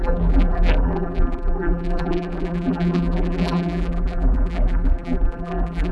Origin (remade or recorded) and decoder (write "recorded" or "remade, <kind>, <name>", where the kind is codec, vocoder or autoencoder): remade, vocoder, BigVGAN v2